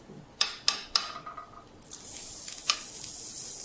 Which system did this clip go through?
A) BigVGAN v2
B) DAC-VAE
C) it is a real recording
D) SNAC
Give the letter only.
C